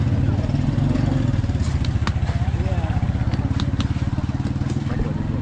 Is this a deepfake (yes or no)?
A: no